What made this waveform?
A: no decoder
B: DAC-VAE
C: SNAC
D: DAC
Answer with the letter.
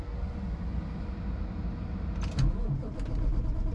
A